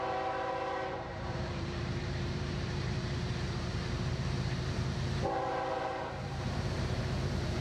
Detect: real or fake fake